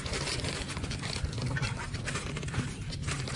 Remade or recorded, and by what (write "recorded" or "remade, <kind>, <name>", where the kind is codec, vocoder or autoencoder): recorded